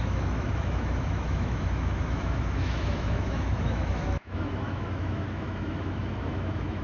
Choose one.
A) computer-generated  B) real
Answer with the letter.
A